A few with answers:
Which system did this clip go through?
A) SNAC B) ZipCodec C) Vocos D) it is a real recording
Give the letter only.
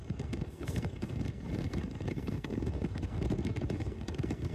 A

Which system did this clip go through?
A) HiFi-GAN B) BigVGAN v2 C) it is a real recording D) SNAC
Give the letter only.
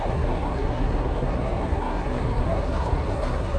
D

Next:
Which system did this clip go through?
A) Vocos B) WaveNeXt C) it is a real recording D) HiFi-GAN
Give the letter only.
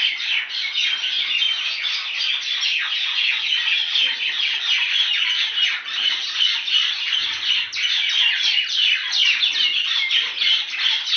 C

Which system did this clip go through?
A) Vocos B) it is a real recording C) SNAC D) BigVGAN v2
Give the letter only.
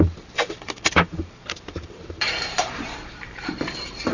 D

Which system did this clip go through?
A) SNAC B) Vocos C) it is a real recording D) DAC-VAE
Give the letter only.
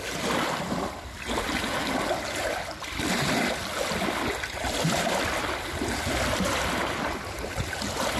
C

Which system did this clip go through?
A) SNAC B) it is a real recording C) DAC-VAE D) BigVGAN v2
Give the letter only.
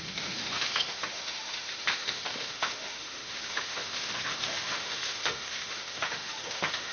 C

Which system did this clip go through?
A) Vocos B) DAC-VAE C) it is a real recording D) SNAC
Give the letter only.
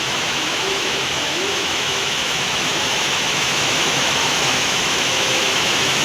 B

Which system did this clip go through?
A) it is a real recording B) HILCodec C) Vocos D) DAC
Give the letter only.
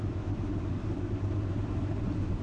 A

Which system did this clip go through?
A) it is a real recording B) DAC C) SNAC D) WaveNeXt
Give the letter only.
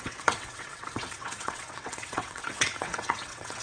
D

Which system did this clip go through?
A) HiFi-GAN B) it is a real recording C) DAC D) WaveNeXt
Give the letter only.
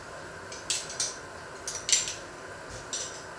B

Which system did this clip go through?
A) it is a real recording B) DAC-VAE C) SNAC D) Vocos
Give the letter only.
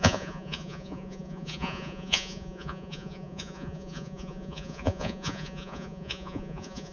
D